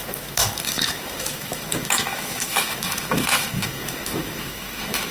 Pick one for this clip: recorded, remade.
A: remade